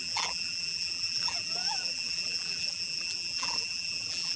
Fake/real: fake